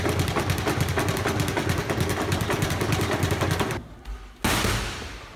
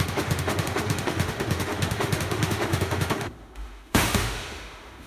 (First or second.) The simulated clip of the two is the second